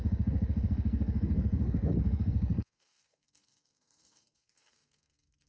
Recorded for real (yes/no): no